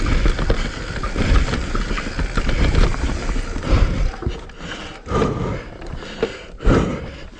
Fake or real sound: real